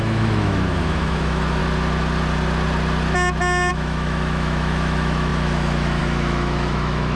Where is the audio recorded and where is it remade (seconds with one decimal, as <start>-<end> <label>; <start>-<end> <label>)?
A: 0.0-1.6 remade; 1.6-3.7 recorded; 3.7-7.2 remade